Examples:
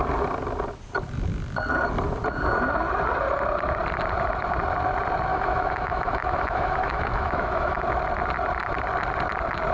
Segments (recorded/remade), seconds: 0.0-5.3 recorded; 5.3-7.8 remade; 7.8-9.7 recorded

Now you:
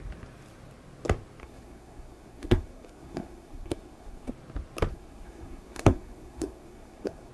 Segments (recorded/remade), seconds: 0.0-1.4 recorded; 1.4-4.3 remade; 4.3-4.9 recorded; 4.9-7.3 remade

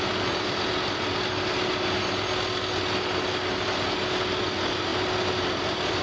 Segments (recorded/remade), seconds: 0.0-6.0 recorded

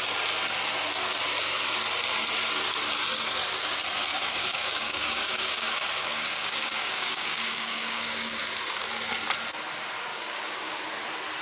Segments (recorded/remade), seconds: 0.0-4.1 recorded; 4.1-8.4 remade; 8.4-10.1 recorded; 10.1-10.8 remade; 10.8-11.4 recorded

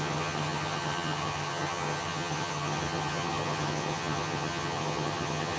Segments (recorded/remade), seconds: 0.0-5.6 remade

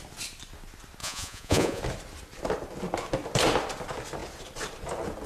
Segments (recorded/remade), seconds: 0.0-1.0 recorded; 1.0-1.8 remade; 1.8-5.3 recorded